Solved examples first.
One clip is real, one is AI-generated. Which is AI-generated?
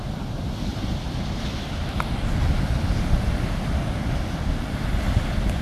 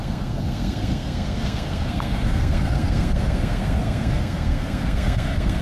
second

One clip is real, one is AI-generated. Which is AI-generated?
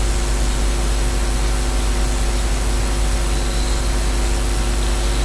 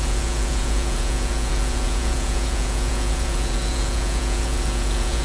second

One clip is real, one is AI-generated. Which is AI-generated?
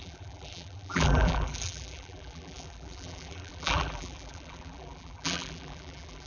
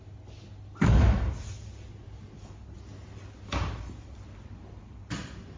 first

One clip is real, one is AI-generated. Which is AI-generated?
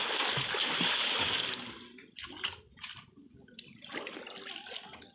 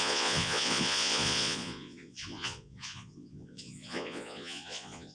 second